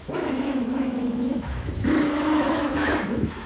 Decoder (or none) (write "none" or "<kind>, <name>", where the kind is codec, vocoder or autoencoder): autoencoder, DAC-VAE